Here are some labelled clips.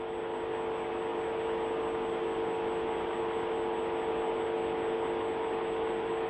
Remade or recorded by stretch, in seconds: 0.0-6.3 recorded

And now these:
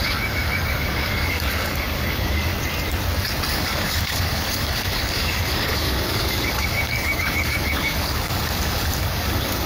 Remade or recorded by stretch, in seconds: 0.0-2.5 remade; 2.5-3.5 recorded; 3.5-9.7 remade

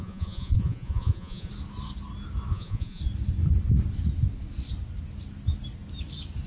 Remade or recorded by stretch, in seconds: 0.0-1.5 remade; 1.5-2.5 recorded; 2.5-3.0 remade; 3.0-6.5 recorded

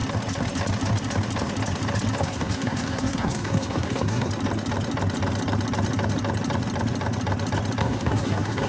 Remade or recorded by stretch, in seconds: 0.0-2.2 recorded; 2.2-4.3 remade; 4.3-7.8 recorded; 7.8-8.7 remade